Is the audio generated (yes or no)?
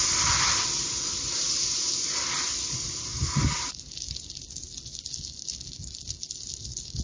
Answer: no